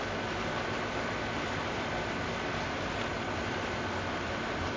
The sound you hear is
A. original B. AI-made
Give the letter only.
B